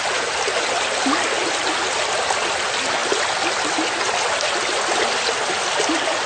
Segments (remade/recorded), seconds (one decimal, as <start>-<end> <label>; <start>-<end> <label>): 0.0-6.3 recorded